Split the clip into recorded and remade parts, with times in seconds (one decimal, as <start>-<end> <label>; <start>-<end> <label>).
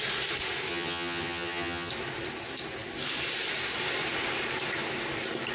0.0-0.7 recorded; 0.7-1.9 remade; 1.9-5.5 recorded